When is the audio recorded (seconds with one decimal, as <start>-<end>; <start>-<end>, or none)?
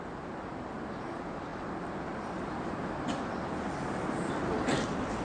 0.0-5.2